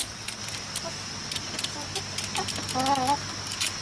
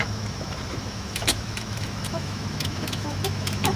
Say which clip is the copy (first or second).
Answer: second